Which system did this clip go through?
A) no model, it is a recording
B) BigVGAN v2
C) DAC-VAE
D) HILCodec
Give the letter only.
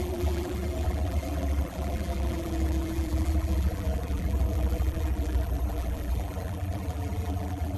B